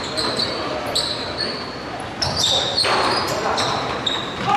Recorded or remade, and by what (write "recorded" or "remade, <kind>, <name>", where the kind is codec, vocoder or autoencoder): recorded